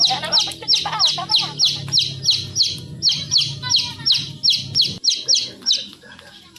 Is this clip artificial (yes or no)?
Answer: no